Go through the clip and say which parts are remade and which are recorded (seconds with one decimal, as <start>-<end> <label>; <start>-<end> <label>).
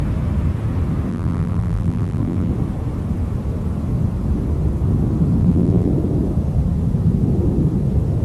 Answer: 0.0-1.1 recorded; 1.1-2.5 remade; 2.5-5.4 recorded; 5.4-5.9 remade; 5.9-8.2 recorded